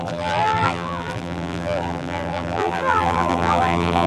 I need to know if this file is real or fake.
fake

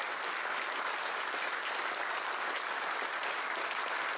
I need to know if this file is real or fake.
real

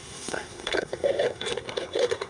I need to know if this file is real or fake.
fake